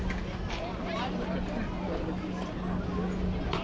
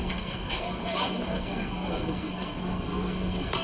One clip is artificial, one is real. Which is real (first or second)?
first